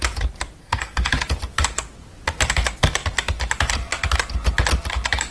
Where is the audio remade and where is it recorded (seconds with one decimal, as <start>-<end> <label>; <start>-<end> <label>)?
0.0-0.6 recorded; 0.6-1.1 remade; 1.1-5.3 recorded